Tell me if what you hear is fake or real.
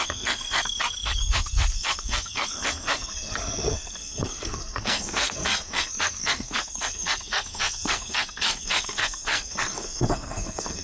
fake